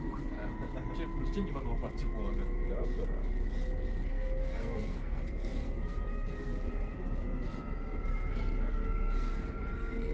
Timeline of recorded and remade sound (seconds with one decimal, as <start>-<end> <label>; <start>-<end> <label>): 0.0-0.4 remade; 0.4-4.1 recorded; 4.1-10.1 remade